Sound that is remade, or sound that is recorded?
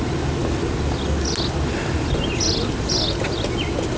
recorded